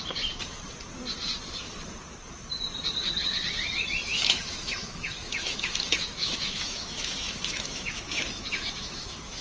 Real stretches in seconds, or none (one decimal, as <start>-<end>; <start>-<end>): 0.0-4.1